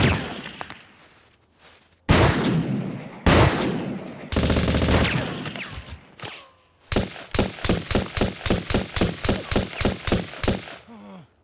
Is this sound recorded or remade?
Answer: recorded